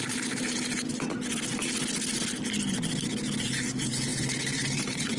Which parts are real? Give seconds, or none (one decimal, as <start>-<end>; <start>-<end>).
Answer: 0.9-3.4